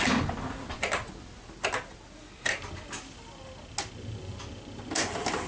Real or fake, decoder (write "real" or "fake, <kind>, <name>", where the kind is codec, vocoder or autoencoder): real